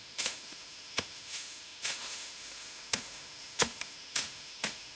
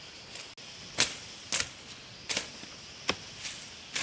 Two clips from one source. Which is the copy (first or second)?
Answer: first